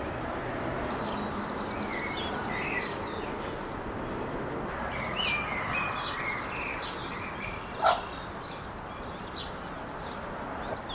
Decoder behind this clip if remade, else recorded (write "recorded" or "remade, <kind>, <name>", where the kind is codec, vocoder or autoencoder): recorded